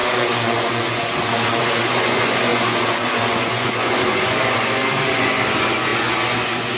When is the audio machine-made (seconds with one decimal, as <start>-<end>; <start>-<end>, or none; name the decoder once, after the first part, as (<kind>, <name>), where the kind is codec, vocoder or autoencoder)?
0.0-6.8 (vocoder, Vocos)

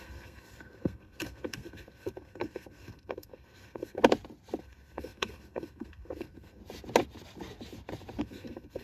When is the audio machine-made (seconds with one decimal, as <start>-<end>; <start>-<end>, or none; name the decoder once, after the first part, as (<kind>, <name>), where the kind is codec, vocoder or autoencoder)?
0.0-4.0 (codec, SNAC); 4.6-6.6; 8.2-8.8